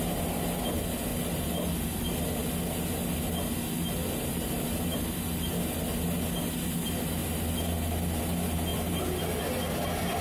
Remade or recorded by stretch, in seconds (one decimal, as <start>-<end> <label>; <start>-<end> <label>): 0.0-8.7 recorded; 8.7-9.4 remade; 9.4-10.2 recorded